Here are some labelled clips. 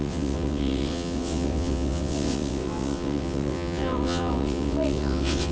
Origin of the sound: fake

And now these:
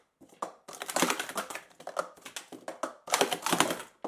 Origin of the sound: real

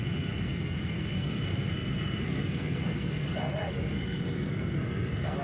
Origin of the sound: fake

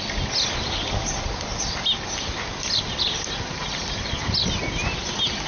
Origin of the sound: real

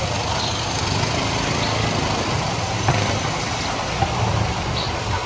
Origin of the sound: real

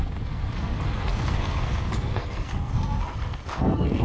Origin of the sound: fake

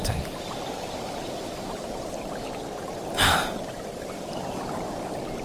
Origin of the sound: fake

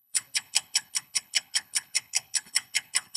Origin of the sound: fake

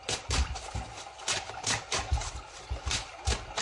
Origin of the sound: real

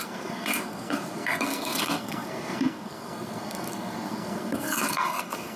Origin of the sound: fake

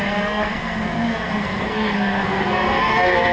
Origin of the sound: fake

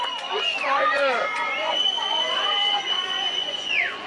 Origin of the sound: fake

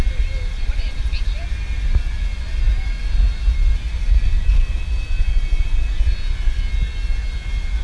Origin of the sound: real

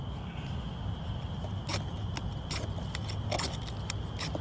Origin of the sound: real